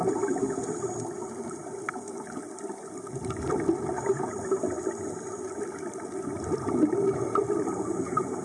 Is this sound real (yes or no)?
yes